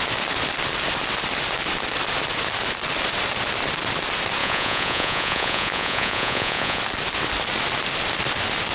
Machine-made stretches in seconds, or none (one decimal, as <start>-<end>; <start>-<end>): 4.4-6.8